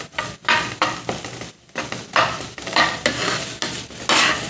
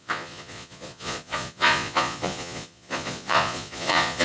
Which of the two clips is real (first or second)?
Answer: first